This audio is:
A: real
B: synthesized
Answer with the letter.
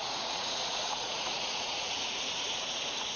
B